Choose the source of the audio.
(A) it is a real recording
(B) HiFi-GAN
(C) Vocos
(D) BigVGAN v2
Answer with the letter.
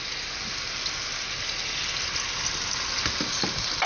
A